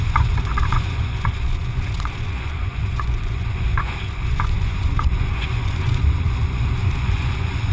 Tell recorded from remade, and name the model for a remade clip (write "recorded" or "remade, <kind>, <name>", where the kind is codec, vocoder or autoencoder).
remade, vocoder, Vocos